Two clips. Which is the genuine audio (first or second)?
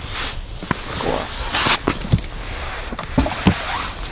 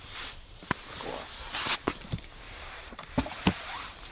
first